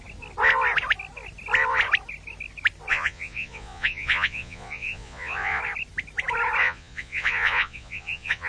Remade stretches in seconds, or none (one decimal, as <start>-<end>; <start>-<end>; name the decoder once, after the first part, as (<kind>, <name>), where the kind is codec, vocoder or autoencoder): 2.9-5.6 (vocoder, Vocos); 6.6-8.5